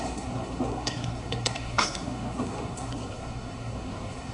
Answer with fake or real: fake